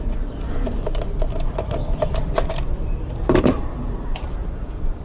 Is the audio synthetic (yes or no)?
yes